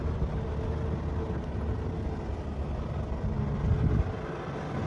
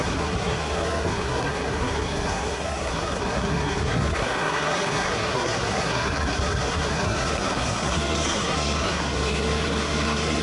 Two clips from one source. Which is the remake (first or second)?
second